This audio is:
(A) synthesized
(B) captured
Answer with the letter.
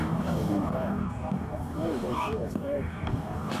A